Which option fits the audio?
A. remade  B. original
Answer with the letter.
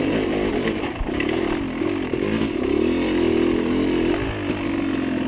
B